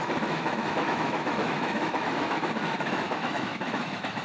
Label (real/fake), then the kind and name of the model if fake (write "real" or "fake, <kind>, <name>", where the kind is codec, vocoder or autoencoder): fake, autoencoder, DAC-VAE